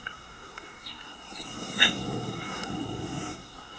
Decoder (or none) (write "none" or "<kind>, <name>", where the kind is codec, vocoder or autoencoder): codec, SNAC